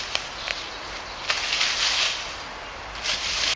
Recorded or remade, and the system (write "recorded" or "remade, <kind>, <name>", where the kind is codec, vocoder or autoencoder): recorded